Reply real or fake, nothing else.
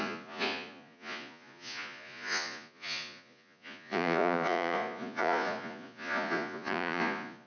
fake